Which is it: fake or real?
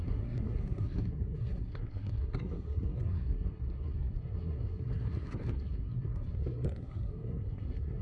fake